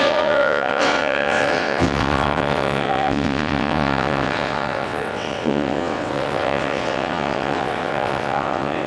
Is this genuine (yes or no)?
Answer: no